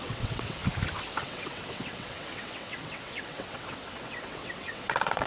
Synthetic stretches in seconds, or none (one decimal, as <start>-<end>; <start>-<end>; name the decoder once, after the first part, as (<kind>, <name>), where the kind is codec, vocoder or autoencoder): 0.0-0.6 (vocoder, WaveNeXt); 1.2-5.3